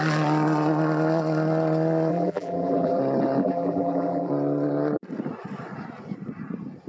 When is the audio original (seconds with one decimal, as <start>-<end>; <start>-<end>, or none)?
0.0-2.1; 3.0-3.4; 4.3-6.9